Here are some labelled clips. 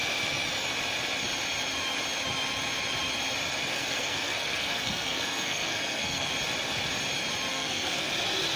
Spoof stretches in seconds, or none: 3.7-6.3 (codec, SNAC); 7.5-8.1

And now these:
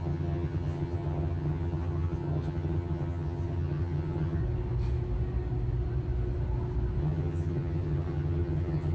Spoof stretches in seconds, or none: 0.0-4.4 (vocoder, HiFi-GAN); 7.0-8.9

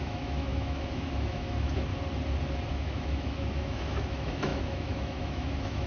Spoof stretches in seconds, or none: 0.0-1.9 (autoencoder, DAC-VAE); 2.7-5.9

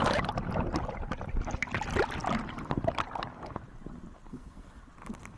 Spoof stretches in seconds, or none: 4.3-4.8 (codec, SNAC)

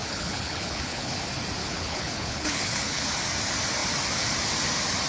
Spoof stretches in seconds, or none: 0.0-1.2 (codec, HILCodec); 1.6-3.0